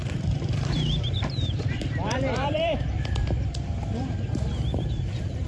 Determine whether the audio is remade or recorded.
remade